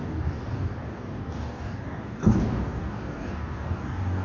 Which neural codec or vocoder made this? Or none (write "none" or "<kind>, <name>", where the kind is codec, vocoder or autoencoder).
codec, DAC